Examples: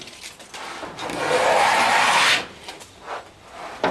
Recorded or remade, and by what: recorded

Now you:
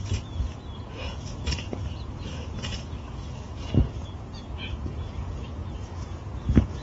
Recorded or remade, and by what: remade, vocoder, Vocos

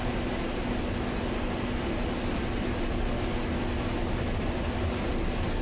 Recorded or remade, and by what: recorded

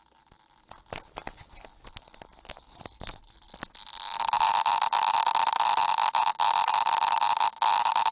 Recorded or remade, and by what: recorded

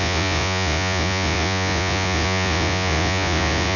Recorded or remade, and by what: remade, vocoder, Vocos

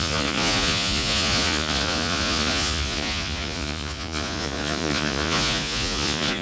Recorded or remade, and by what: remade, vocoder, Vocos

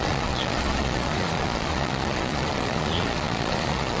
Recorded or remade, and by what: remade, vocoder, Vocos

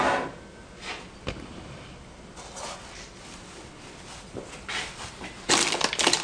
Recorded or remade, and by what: recorded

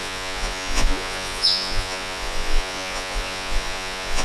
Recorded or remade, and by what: remade, vocoder, Vocos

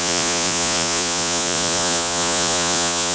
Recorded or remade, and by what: remade, vocoder, Vocos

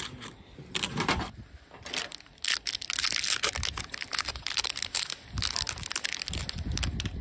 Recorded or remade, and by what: recorded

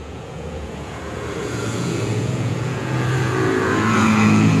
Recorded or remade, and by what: remade, vocoder, Vocos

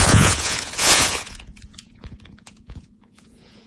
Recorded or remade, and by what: remade, vocoder, Vocos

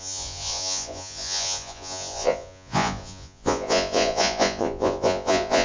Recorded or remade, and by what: remade, vocoder, Vocos